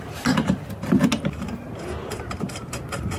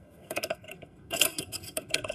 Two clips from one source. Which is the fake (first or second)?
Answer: second